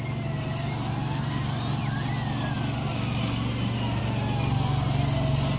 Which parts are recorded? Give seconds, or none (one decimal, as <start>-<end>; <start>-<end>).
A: 0.0-5.6